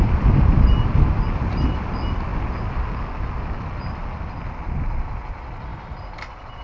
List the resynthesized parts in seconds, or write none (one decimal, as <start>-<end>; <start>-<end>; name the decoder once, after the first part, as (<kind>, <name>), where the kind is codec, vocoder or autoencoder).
none